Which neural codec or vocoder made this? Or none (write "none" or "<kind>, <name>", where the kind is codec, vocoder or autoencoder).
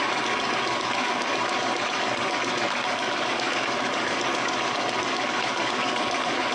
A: codec, DAC